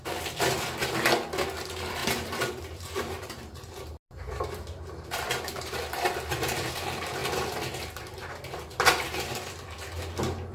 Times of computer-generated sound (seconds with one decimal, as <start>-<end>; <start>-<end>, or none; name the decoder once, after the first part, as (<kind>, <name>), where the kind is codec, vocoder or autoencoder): 2.0-6.7 (vocoder, BigVGAN v2)

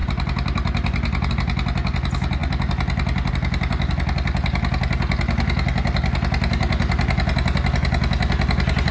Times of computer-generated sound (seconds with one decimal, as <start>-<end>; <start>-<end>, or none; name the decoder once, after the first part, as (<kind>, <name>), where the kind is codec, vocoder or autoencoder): none

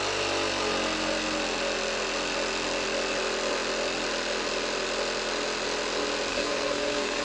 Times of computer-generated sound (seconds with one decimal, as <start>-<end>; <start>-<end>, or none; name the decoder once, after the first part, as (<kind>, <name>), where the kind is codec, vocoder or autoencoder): 6.3-7.2 (codec, SNAC)

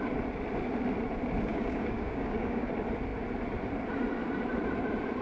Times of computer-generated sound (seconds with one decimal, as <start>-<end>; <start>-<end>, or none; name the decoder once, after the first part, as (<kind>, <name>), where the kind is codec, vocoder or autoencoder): 1.5-2.7 (codec, DAC)

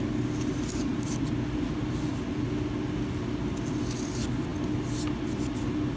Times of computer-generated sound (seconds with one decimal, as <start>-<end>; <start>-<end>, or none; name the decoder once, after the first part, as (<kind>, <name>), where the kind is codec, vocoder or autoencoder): none

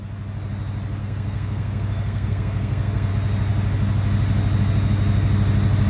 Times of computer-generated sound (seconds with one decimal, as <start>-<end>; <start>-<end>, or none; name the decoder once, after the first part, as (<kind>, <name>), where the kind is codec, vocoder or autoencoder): 1.0-3.1 (codec, SNAC)